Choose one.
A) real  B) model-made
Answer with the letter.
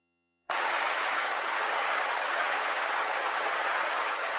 B